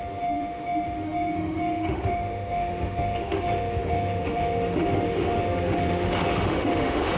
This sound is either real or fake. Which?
fake